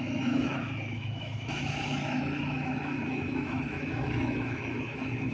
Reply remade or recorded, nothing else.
remade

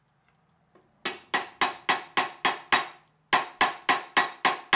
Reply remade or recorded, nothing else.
recorded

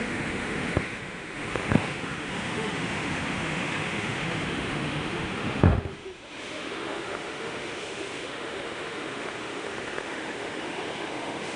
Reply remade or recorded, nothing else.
remade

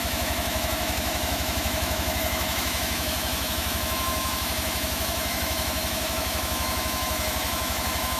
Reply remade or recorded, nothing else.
remade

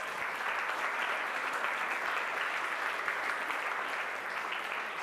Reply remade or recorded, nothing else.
recorded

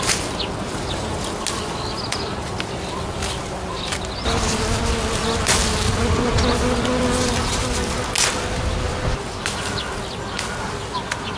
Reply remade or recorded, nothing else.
recorded